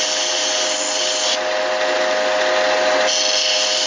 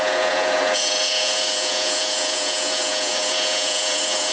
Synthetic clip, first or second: second